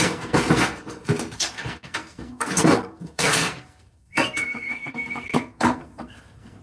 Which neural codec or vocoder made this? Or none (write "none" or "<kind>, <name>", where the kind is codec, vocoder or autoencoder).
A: codec, SNAC